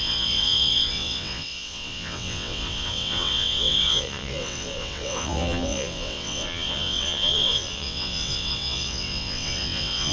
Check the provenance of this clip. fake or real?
fake